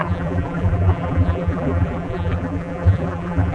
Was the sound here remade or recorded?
remade